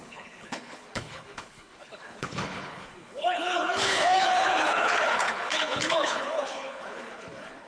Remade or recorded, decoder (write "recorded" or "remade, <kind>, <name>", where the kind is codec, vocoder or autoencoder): remade, codec, HILCodec